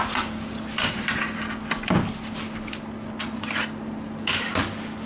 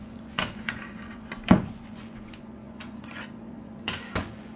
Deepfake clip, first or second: second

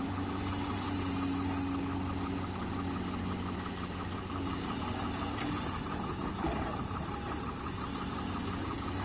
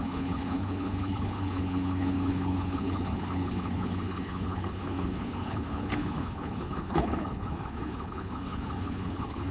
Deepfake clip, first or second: second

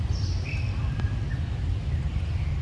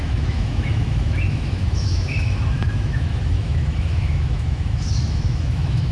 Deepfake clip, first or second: second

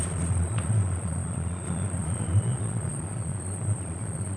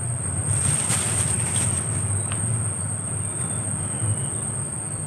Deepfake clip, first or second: first